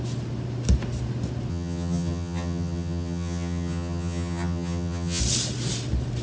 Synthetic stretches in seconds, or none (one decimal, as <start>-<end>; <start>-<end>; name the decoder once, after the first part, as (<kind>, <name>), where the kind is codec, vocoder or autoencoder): 1.5-5.2 (vocoder, HiFi-GAN)